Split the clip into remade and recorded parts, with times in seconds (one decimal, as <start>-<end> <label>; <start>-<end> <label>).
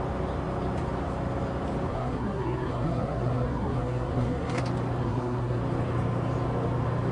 0.0-1.9 recorded; 1.9-4.6 remade; 4.6-5.0 recorded; 5.0-5.6 remade; 5.6-7.1 recorded